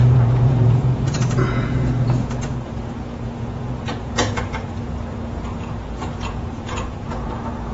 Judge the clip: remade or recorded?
remade